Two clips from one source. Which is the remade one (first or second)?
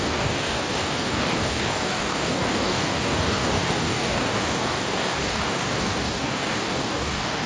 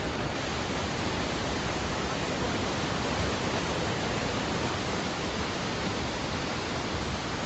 first